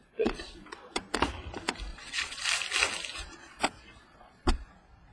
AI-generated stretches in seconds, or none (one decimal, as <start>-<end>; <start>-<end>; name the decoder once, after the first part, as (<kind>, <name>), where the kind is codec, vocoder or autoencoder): 0.0-1.0 (vocoder, Vocos); 1.9-2.4; 3.1-4.6